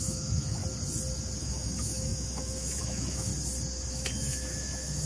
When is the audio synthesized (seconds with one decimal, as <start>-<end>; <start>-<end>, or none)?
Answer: 0.0-0.6; 1.4-3.3; 3.9-5.1

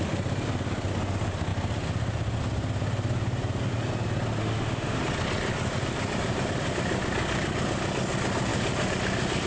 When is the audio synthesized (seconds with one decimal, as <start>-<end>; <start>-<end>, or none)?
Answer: 4.4-5.0

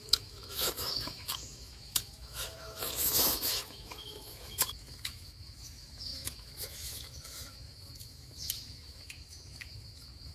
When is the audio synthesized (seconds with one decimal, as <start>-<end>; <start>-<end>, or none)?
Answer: 0.0-10.3

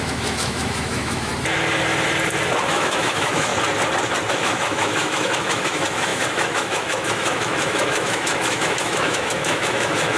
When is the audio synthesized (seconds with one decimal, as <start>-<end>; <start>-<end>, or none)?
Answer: 0.0-1.3; 2.7-3.5; 4.3-10.2

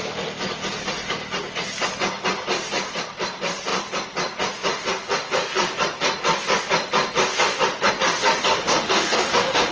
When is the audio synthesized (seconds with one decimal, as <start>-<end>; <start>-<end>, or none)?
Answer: 8.5-9.7

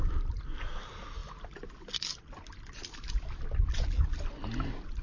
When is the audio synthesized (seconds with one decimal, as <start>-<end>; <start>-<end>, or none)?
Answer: none

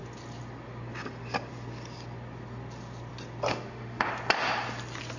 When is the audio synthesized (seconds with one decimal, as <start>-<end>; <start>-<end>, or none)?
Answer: 3.5-4.1